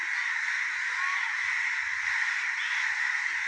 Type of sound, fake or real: real